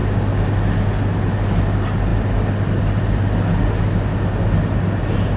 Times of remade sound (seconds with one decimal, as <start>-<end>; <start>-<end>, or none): none